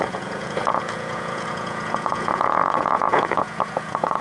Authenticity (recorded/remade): remade